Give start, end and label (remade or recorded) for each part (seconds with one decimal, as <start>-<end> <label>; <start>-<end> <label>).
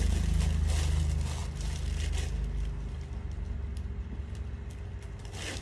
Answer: 0.0-5.6 recorded